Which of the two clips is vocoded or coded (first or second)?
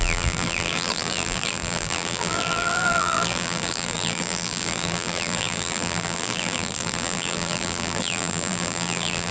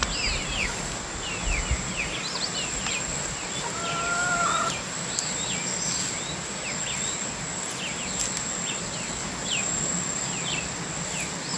first